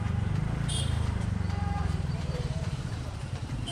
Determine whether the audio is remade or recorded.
remade